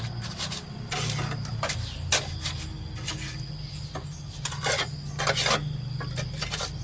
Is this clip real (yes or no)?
yes